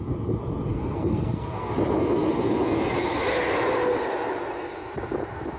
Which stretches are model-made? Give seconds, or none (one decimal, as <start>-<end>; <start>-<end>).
0.7-1.7